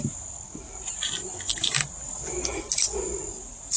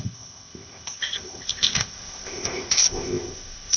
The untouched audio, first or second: first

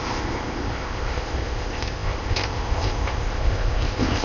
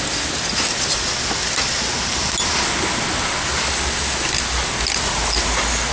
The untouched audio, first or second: second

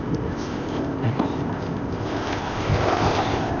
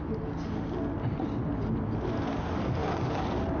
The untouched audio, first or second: second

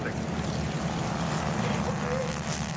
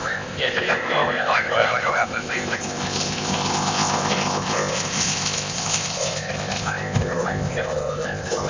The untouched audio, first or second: first